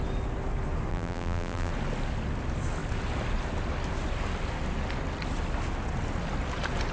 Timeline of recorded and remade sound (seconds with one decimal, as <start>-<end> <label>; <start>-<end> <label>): 0.0-0.9 recorded; 0.9-1.7 remade; 1.7-6.9 recorded